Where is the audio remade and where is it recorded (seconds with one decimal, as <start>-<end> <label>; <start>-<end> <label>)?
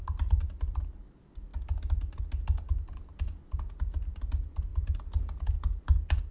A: 0.0-6.3 recorded